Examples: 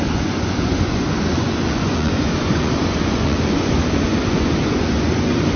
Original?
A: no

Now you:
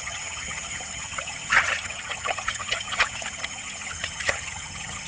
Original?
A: no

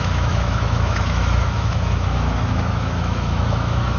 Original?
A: no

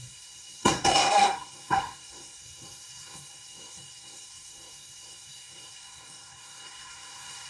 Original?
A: no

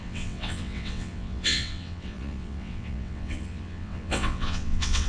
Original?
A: no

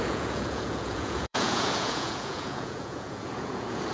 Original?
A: no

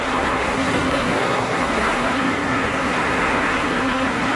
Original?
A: no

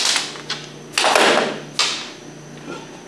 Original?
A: yes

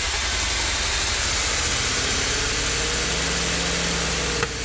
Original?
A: yes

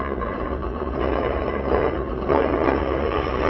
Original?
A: no